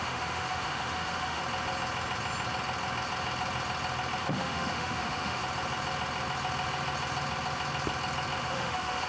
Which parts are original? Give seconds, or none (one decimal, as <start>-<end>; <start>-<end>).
1.4-4.2; 5.4-8.4